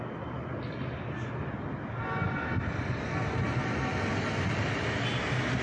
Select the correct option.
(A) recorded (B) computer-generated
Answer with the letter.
A